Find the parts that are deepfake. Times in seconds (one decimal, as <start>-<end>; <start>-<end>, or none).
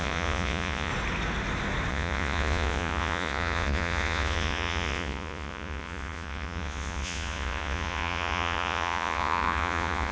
0.0-0.9; 1.9-10.1